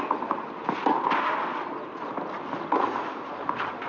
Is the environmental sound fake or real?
real